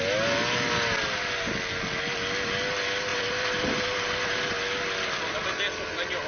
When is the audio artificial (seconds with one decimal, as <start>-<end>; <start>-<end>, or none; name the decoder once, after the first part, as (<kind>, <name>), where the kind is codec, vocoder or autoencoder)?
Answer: 3.1-4.5 (vocoder, BigVGAN v2)